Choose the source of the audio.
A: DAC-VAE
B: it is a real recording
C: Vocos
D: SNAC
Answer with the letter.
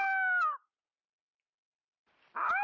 B